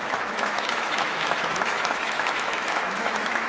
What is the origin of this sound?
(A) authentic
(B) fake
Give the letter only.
B